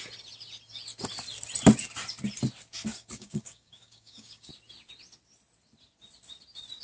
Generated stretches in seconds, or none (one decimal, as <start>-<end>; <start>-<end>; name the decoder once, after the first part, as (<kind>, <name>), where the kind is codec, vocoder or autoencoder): 2.9-4.5 (codec, DAC)